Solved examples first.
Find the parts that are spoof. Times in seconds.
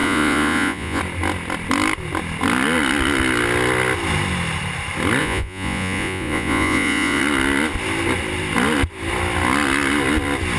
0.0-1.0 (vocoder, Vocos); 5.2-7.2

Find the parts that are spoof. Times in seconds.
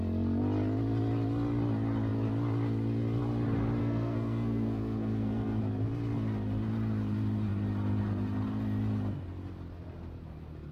3.8-5.6 (codec, SNAC)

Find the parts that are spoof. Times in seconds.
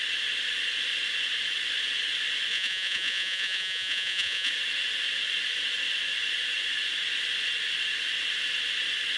2.5-4.5 (vocoder, Vocos)